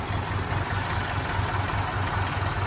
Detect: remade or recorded recorded